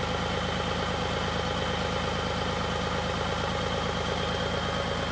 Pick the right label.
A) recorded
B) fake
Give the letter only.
A